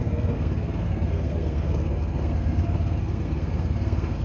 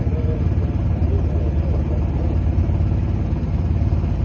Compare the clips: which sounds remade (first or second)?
first